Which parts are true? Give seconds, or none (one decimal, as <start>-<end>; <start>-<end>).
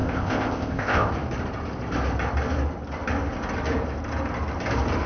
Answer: 1.1-5.1